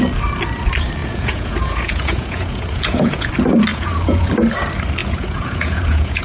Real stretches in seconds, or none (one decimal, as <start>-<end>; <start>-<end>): 0.0-1.0; 3.3-3.7; 4.3-5.0